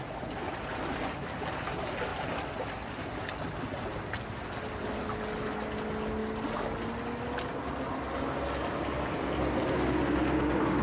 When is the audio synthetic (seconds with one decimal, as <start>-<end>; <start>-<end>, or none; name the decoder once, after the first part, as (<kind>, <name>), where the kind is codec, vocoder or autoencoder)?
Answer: none